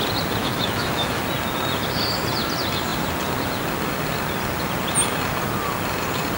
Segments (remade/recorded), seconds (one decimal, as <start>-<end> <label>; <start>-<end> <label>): 0.0-0.4 recorded; 0.4-1.2 remade; 1.2-6.4 recorded